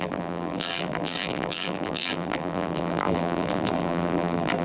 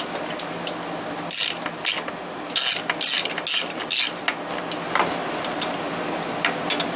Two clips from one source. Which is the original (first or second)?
second